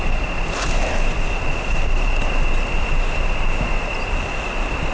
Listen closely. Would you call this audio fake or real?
real